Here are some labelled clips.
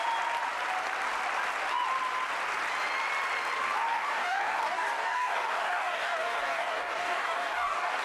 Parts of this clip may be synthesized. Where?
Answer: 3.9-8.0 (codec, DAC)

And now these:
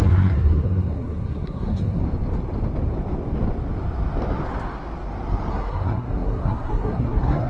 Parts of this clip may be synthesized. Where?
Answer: 0.0-2.0 (codec, SNAC); 5.5-7.5

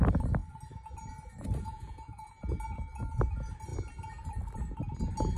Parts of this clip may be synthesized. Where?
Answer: 1.7-2.3 (vocoder, Vocos)

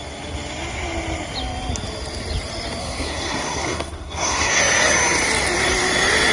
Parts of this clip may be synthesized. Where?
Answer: 2.8-4.6 (codec, SNAC)